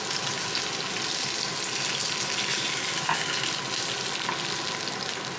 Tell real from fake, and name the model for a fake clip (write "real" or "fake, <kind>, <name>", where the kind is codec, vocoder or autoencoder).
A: real